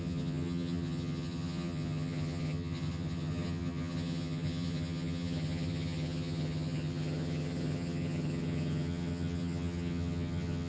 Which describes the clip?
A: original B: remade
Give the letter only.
B